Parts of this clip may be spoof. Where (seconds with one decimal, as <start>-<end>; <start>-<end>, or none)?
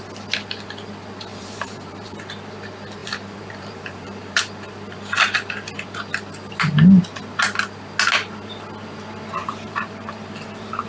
1.3-2.1; 3.0-4.4; 9.4-10.9